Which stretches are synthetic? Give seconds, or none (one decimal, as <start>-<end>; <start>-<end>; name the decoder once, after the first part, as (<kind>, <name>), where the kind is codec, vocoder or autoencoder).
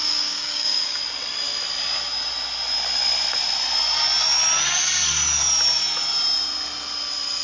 0.0-1.0 (codec, DAC)